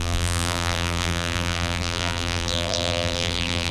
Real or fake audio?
fake